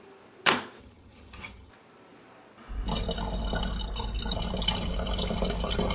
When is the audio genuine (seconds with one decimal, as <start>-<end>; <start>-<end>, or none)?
0.0-0.8; 1.7-5.9

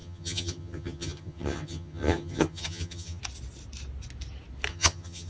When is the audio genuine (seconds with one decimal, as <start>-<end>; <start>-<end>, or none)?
3.2-4.7

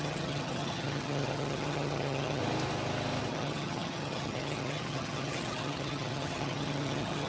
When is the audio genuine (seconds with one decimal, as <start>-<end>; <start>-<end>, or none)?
2.4-3.3

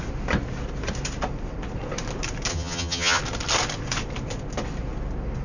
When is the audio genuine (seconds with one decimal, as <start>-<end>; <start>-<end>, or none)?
0.0-2.5; 3.2-5.4

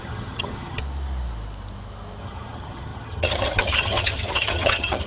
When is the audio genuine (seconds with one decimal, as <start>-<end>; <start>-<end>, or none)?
0.8-2.2

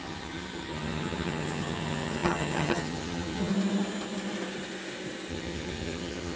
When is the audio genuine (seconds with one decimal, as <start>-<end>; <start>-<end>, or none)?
3.5-5.3

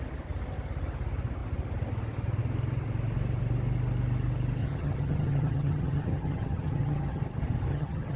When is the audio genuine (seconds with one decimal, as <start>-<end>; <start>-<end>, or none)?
0.0-4.6; 7.2-7.7